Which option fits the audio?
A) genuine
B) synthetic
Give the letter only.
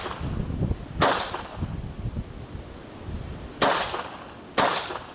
A